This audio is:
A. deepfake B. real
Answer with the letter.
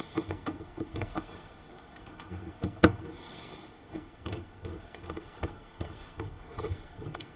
A